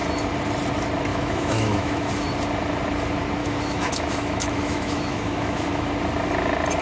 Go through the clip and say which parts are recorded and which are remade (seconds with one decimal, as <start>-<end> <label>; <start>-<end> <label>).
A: 0.0-1.1 recorded; 1.1-2.1 remade; 2.1-3.4 recorded; 3.4-5.9 remade; 5.9-6.8 recorded